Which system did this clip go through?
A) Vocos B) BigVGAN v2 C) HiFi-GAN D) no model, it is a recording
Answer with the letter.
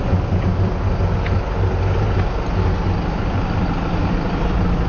D